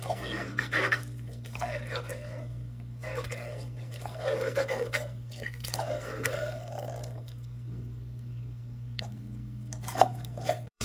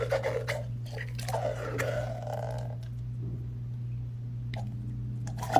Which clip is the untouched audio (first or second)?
second